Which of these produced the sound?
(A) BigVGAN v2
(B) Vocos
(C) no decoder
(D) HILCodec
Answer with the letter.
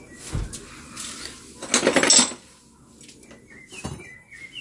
C